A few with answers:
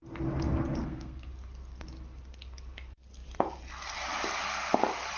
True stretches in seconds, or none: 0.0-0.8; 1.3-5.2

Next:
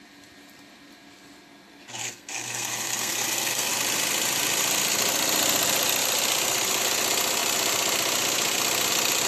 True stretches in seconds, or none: 0.0-2.0; 3.7-9.3

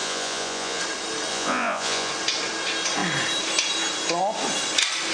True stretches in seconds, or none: 0.8-1.3; 2.1-5.1